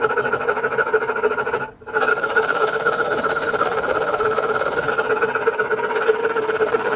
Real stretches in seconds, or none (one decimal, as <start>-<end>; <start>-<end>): 0.0-2.1; 4.9-6.2